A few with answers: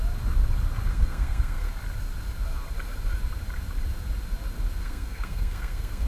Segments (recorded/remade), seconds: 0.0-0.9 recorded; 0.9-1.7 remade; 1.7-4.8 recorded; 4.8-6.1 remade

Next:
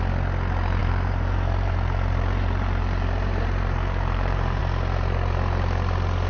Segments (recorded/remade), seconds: 0.0-0.8 recorded; 0.8-4.6 remade; 4.6-6.3 recorded

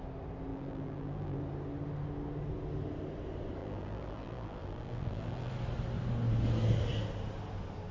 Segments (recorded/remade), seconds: 0.0-0.5 recorded; 0.5-1.4 remade; 1.4-3.6 recorded; 3.6-5.5 remade; 5.5-7.9 recorded